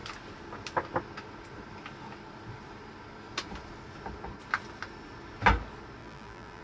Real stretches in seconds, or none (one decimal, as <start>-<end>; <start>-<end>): 0.0-6.0